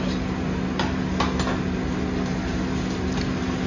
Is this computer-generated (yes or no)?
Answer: no